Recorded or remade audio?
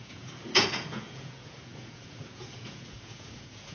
remade